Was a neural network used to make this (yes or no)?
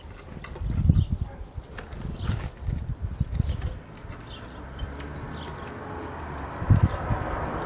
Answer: no